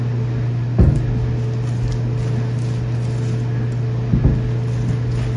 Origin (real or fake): real